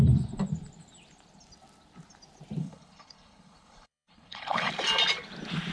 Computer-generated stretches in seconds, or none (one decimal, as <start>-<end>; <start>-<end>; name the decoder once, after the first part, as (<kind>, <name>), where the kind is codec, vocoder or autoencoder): 2.6-4.7 (codec, HILCodec)